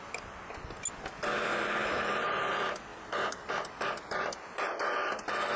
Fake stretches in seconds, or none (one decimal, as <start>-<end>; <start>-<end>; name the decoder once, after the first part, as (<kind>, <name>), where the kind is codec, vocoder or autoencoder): 1.8-2.5 (vocoder, BigVGAN v2); 2.9-3.5